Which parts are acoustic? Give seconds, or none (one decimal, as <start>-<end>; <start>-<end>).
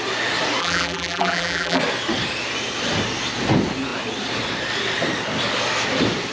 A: 0.0-0.6; 1.8-6.3